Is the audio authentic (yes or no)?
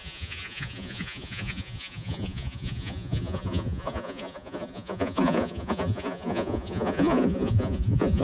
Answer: no